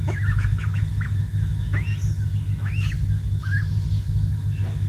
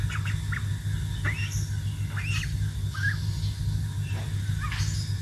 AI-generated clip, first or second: first